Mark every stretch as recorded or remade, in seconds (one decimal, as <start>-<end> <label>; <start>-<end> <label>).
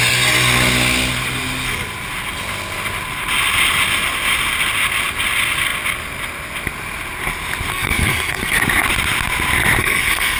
0.0-7.7 recorded; 7.7-8.6 remade; 8.6-9.8 recorded; 9.8-10.4 remade